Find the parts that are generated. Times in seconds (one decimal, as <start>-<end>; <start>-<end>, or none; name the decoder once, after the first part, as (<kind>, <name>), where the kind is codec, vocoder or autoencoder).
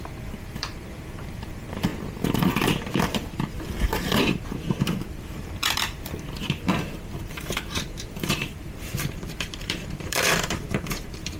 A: 0.0-1.9 (vocoder, BigVGAN v2); 2.8-11.4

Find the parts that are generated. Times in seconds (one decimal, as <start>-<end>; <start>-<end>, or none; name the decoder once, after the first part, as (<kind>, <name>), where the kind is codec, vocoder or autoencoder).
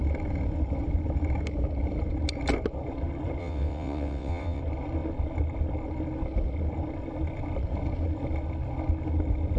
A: 3.4-4.6 (vocoder, WaveNeXt)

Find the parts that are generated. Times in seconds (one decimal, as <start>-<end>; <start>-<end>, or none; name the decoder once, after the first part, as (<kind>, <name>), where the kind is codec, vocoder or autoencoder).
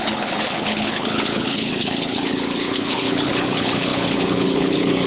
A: 0.0-5.1 (codec, HILCodec)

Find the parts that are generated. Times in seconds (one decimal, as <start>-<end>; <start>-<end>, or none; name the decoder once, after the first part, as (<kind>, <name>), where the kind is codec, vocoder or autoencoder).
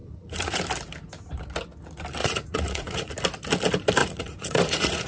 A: 0.0-0.6 (vocoder, Vocos); 2.2-3.1; 4.0-5.1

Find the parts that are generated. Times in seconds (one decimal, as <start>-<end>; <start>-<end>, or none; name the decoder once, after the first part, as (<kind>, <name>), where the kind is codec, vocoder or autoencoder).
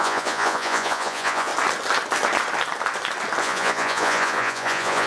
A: 0.0-1.5 (vocoder, Vocos); 3.4-5.1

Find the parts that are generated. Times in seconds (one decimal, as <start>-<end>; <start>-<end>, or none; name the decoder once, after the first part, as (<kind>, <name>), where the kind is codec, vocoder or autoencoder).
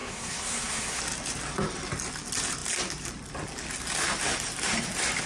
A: 0.0-1.0 (codec, SNAC)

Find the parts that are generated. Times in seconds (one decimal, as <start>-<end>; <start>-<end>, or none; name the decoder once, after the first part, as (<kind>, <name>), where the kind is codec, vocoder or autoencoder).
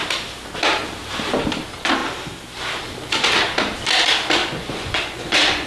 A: 4.4-5.7 (vocoder, Vocos)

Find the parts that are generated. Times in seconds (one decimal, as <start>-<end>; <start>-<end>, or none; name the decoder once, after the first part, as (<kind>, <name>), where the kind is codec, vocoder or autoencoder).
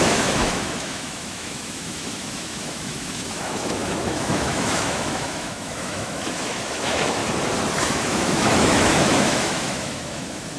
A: 0.0-7.2 (autoencoder, DAC-VAE); 7.8-10.6